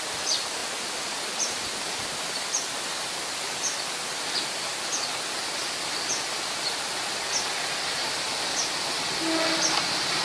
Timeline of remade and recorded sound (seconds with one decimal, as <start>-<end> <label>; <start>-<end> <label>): 0.0-10.2 recorded